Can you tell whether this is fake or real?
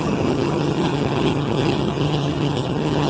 fake